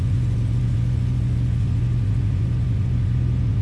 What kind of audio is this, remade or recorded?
remade